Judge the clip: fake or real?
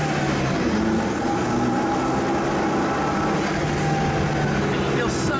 real